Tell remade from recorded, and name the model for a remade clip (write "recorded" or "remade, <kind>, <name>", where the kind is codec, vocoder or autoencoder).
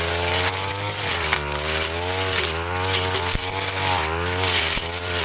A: recorded